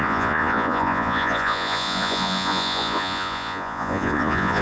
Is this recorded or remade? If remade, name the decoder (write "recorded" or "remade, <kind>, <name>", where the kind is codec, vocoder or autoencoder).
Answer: remade, vocoder, Vocos